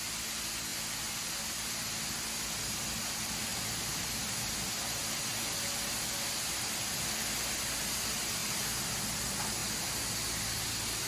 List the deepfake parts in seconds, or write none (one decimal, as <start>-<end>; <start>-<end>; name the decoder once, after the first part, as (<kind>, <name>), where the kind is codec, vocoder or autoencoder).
3.5-4.5 (vocoder, BigVGAN v2)